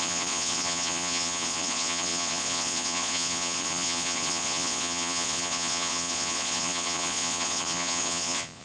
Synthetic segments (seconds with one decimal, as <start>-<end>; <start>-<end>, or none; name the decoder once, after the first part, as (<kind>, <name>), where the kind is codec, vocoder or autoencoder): 0.0-8.6 (vocoder, Vocos)